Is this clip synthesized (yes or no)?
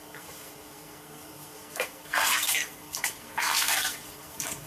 yes